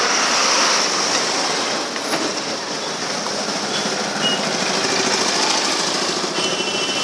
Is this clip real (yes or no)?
yes